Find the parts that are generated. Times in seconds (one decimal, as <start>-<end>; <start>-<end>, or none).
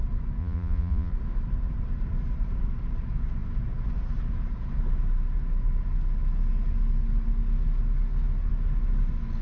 0.4-1.1